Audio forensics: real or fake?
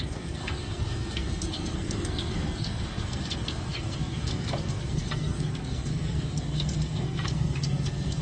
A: fake